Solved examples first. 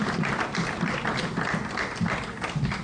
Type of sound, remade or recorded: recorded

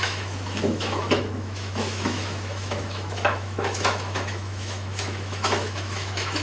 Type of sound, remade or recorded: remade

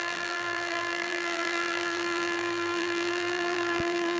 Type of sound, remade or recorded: remade